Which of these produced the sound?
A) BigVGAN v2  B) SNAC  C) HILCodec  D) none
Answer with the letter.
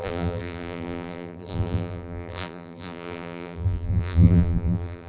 A